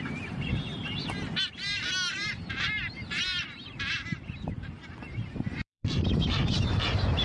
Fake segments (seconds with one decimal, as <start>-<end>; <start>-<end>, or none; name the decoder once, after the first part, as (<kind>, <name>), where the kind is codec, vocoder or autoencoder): 0.0-7.2 (vocoder, BigVGAN v2)